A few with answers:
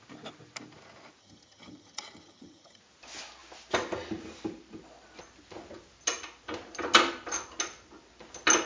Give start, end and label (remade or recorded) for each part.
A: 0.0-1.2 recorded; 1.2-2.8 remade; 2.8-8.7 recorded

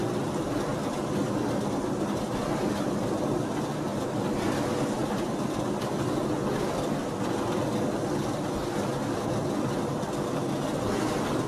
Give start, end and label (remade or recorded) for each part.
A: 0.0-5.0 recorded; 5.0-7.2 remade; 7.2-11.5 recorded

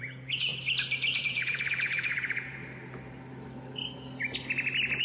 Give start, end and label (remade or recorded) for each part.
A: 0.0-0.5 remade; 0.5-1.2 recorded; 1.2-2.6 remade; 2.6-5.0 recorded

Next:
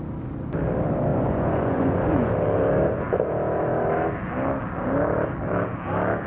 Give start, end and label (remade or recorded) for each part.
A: 0.0-1.1 recorded; 1.1-2.3 remade; 2.3-6.3 recorded